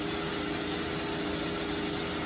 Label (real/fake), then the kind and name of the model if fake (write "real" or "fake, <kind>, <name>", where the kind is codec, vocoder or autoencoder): real